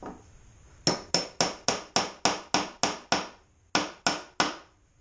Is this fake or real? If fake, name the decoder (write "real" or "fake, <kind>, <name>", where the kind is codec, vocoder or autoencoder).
real